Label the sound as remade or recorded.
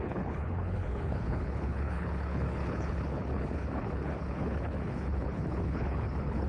remade